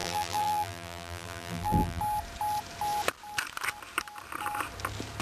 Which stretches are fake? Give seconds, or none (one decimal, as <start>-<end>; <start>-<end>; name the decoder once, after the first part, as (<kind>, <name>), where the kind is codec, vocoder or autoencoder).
0.0-2.0 (vocoder, BigVGAN v2)